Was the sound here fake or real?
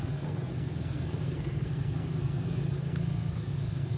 fake